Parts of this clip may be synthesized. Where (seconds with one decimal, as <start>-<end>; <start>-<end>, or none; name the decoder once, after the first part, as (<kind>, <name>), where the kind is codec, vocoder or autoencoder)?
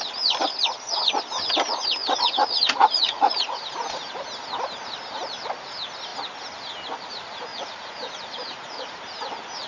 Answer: 2.0-3.6 (vocoder, Vocos); 7.5-9.0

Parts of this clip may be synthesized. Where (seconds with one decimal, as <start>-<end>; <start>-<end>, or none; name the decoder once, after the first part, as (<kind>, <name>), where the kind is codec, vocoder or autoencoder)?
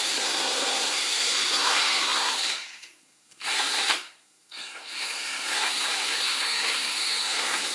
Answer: 0.0-7.7 (codec, SNAC)